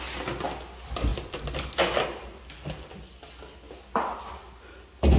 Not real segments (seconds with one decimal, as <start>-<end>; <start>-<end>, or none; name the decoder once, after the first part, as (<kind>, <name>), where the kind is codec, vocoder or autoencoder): none